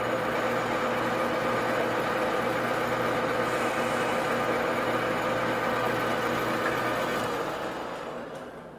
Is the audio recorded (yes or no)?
yes